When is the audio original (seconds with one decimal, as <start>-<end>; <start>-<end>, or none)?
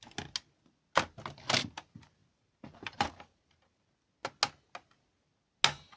0.0-2.2; 3.8-6.0